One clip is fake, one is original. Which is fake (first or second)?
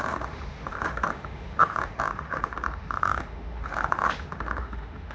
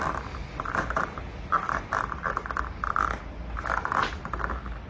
first